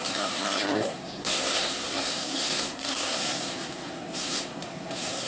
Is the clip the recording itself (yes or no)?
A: no